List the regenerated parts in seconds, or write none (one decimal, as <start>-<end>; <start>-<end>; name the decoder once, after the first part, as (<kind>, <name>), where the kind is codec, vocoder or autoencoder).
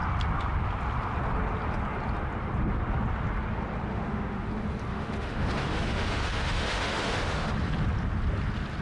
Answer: 3.9-4.5 (autoencoder, DAC-VAE); 4.9-7.5